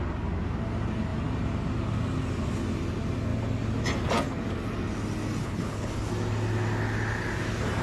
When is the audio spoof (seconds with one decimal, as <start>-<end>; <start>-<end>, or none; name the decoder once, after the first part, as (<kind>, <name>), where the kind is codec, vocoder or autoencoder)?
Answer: 5.4-6.1 (codec, HILCodec)